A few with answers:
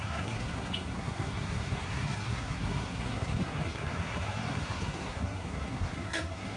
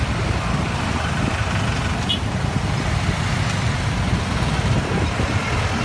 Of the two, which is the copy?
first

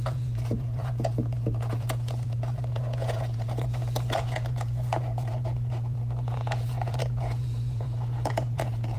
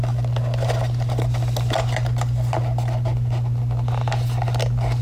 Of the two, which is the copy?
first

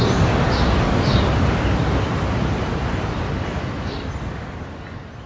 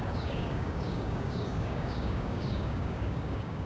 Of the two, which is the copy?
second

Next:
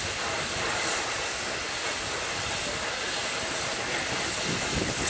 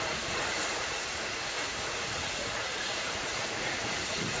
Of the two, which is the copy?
second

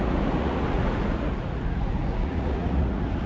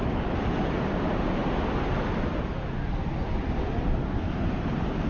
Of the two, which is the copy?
first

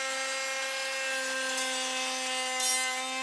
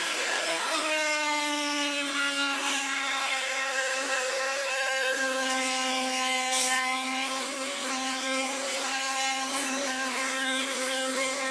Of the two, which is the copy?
second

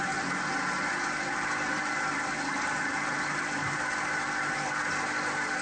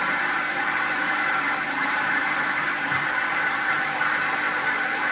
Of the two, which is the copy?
second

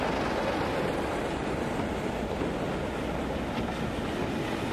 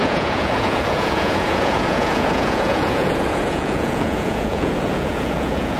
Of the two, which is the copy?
second